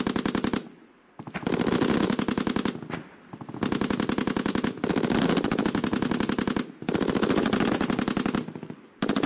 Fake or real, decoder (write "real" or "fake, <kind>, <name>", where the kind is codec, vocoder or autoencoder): real